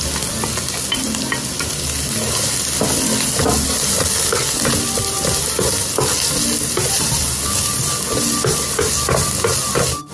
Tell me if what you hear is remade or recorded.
recorded